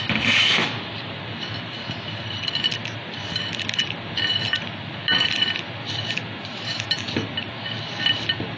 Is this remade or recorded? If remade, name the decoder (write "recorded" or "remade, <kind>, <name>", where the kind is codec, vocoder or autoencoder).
recorded